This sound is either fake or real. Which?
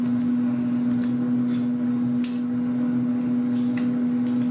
real